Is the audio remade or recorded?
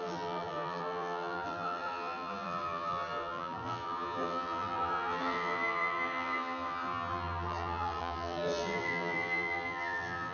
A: remade